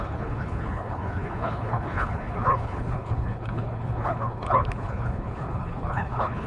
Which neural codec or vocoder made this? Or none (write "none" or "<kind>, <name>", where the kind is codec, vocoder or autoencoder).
codec, HILCodec